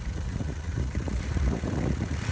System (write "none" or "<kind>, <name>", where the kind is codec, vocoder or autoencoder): vocoder, Vocos